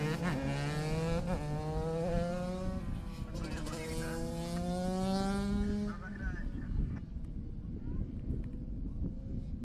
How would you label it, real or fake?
real